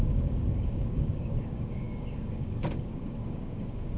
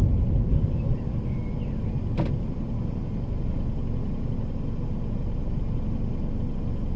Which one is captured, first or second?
second